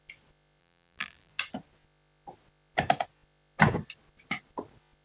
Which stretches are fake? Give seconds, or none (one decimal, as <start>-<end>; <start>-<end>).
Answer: 0.6-1.3